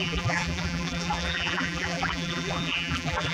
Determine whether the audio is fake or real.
fake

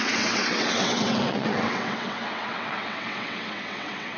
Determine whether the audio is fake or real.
fake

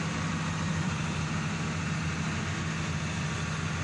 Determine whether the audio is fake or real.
real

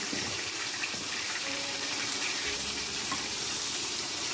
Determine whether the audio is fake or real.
fake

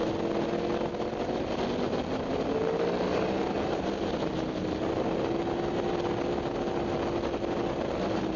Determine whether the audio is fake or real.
real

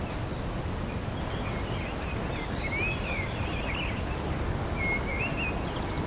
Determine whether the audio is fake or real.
real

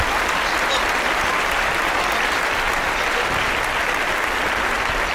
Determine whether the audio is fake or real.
real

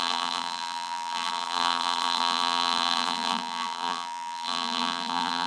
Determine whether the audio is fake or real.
fake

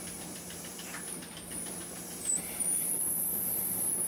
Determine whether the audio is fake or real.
fake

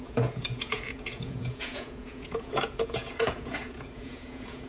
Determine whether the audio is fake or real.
fake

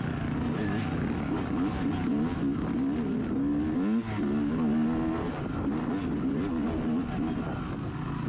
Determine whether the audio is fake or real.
real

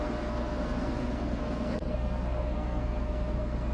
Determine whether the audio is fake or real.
fake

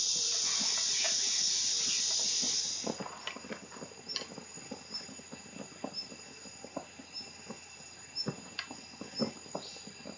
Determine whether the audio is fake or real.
real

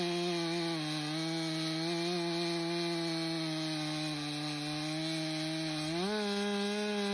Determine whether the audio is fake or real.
real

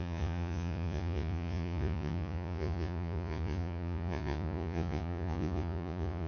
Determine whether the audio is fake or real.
fake